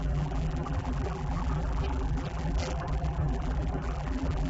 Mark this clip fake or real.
fake